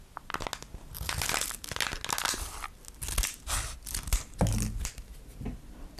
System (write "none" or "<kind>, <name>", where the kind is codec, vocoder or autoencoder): none